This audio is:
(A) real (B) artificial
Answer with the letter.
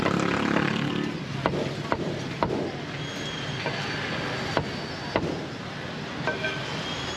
A